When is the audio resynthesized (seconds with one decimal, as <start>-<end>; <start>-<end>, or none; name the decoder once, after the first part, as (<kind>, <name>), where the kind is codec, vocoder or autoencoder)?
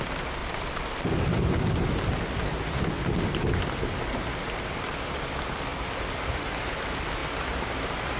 0.4-2.0 (vocoder, BigVGAN v2); 5.7-6.5